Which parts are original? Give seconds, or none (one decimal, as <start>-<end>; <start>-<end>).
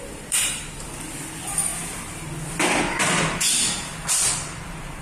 1.7-2.8